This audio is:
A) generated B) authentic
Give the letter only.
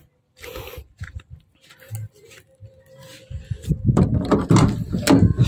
B